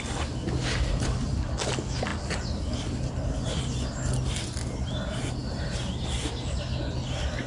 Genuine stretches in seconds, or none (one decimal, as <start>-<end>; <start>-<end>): 0.0-7.5